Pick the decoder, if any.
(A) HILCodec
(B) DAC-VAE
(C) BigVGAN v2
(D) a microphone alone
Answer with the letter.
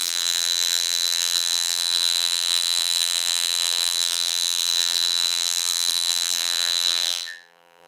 C